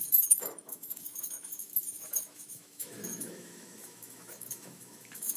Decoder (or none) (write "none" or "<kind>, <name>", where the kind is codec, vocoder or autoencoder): autoencoder, DAC-VAE